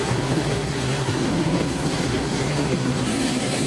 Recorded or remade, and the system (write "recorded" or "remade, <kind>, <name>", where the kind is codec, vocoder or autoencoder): remade, codec, SNAC